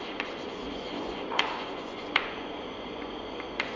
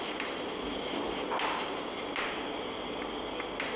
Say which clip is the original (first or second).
second